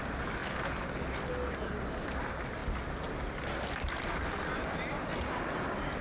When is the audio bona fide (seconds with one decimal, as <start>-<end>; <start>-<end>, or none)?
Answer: 0.0-6.0